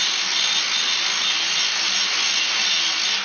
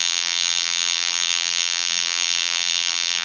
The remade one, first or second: second